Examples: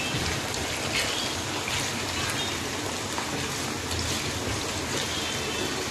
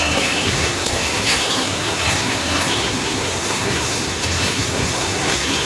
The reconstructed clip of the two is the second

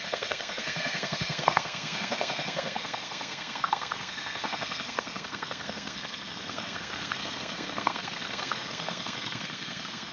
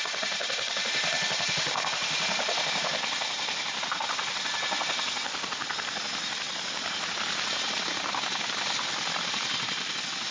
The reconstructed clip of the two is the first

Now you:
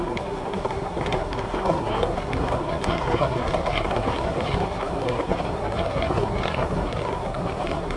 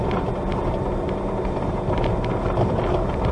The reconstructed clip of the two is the first